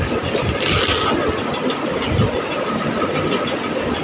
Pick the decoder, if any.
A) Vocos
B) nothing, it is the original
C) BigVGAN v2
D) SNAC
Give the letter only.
B